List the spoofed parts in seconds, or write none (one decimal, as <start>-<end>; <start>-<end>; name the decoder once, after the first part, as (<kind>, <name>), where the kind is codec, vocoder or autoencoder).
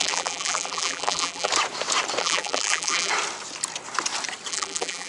0.0-1.5 (vocoder, BigVGAN v2); 2.2-3.1; 4.5-5.1